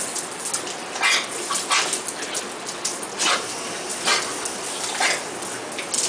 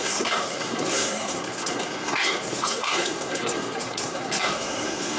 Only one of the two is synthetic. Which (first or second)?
second